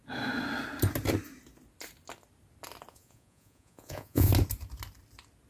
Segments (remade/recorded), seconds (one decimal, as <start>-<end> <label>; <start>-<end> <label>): 0.0-2.9 recorded; 2.9-4.3 remade; 4.3-5.5 recorded